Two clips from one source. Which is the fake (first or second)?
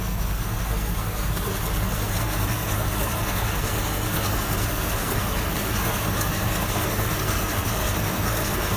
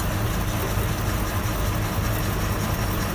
first